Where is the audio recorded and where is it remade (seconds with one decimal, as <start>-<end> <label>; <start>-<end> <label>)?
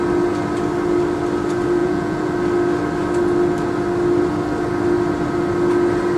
0.0-1.8 recorded; 1.8-2.3 remade; 2.3-6.2 recorded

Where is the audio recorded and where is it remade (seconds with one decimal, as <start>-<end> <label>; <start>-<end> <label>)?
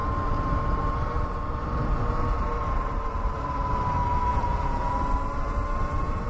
0.0-4.3 recorded; 4.3-4.9 remade; 4.9-6.3 recorded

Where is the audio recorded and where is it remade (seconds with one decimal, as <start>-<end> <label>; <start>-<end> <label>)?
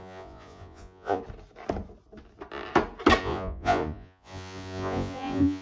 0.0-1.2 remade; 1.2-3.2 recorded; 3.2-5.6 remade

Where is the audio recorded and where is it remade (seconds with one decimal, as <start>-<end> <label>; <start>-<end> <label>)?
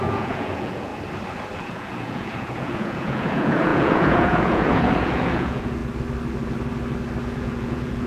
0.0-0.9 remade; 0.9-1.6 recorded; 1.6-5.8 remade; 5.8-7.2 recorded; 7.2-8.1 remade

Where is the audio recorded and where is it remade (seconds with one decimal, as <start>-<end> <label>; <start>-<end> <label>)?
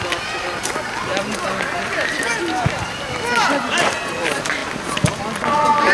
0.0-5.9 recorded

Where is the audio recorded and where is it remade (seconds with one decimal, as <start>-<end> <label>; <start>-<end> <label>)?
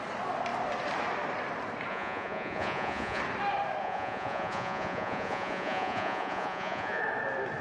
0.0-1.9 recorded; 1.9-3.2 remade; 3.2-3.8 recorded; 3.8-7.0 remade; 7.0-7.6 recorded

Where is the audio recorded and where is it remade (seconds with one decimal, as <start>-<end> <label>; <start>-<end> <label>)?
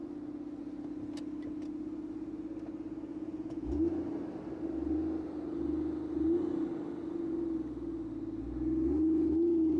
0.0-3.1 recorded; 3.1-3.8 remade; 3.8-9.8 recorded